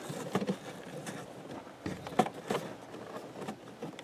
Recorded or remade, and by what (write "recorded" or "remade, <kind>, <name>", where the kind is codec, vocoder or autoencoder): recorded